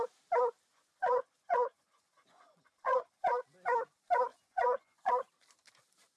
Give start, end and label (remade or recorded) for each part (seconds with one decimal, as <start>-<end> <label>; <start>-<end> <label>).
0.0-0.7 recorded; 0.7-3.4 remade; 3.4-4.3 recorded; 4.3-5.1 remade; 5.1-6.2 recorded